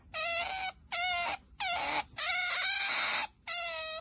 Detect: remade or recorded recorded